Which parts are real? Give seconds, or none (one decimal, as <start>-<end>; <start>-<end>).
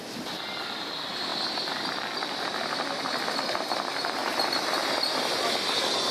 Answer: 1.3-2.1; 4.2-5.3